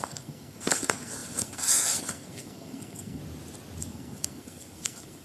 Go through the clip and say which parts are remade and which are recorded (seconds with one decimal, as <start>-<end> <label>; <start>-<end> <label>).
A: 0.0-3.2 remade; 3.2-3.8 recorded; 3.8-5.2 remade